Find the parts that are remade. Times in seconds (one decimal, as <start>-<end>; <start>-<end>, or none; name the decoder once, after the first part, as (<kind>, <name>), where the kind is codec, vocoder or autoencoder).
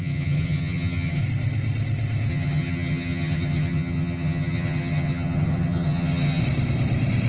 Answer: 0.0-1.2 (vocoder, HiFi-GAN); 2.3-6.4